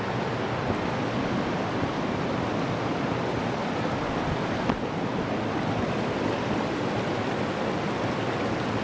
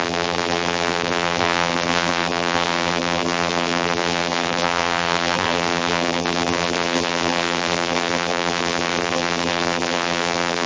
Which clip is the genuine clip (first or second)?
first